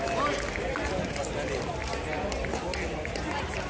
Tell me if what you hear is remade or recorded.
recorded